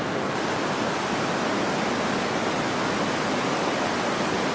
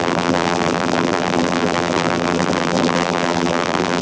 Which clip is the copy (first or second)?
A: second